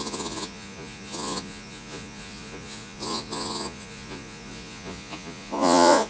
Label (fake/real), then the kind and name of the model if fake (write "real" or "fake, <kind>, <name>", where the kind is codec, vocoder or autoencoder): fake, vocoder, Vocos